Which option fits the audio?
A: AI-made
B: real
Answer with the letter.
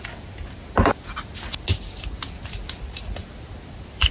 B